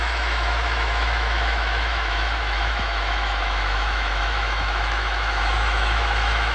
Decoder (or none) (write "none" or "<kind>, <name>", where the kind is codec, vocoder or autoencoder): autoencoder, DAC-VAE